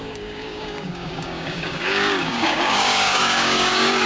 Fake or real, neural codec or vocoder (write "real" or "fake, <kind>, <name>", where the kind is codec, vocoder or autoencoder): fake, codec, DAC